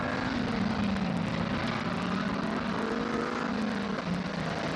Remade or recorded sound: recorded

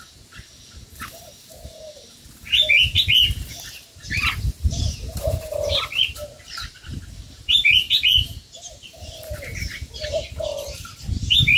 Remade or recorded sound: remade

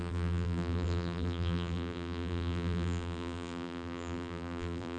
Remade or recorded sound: remade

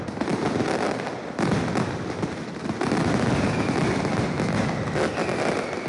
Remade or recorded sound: recorded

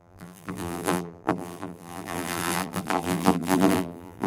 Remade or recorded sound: remade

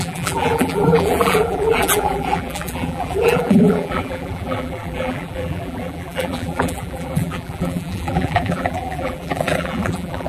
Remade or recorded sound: remade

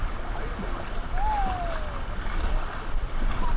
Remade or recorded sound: recorded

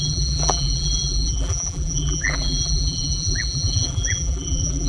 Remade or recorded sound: remade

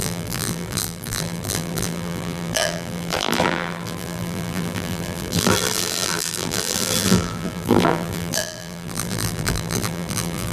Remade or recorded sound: remade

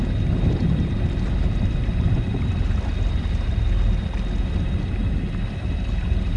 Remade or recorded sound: recorded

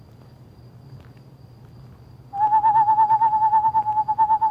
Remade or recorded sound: recorded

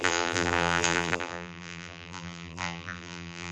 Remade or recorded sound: remade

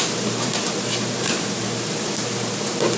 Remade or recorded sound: remade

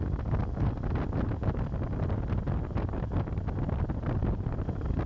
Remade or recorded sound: recorded